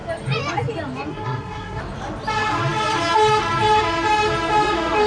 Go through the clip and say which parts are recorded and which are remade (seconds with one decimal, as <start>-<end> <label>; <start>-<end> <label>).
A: 0.0-1.1 recorded; 1.1-1.8 remade; 1.8-5.1 recorded